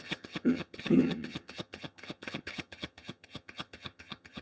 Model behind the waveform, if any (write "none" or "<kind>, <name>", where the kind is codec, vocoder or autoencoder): vocoder, HiFi-GAN